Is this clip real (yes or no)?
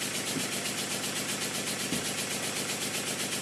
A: yes